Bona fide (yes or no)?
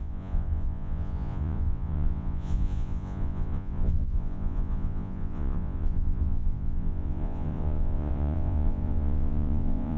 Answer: no